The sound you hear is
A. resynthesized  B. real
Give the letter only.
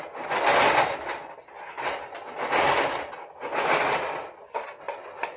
B